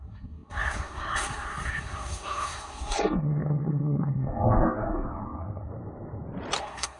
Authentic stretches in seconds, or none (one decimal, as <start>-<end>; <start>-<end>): 5.7-6.6